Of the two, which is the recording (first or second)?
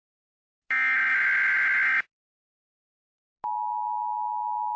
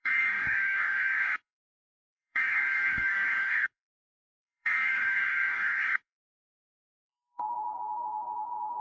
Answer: first